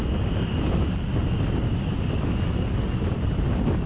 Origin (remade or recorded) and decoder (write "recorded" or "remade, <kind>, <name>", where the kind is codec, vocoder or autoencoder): recorded